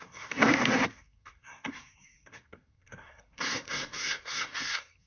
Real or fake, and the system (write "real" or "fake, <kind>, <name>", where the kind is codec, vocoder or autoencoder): fake, codec, SNAC